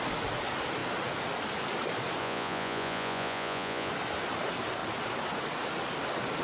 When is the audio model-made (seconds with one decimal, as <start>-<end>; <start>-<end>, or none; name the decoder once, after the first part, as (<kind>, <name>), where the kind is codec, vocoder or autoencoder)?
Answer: 2.2-3.9 (vocoder, Vocos)